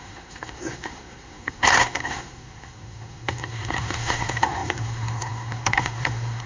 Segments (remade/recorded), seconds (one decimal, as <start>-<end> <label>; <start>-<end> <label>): 0.0-6.5 remade